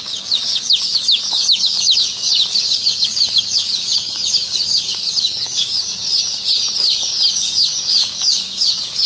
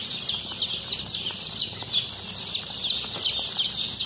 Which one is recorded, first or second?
second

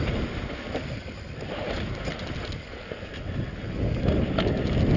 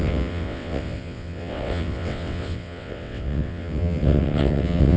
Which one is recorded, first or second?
first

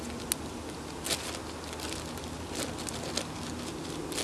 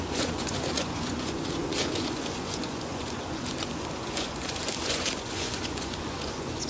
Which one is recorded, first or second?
first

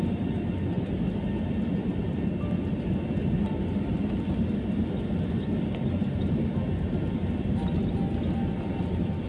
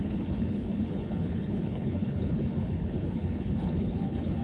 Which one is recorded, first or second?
first